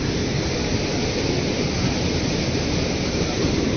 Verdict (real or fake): real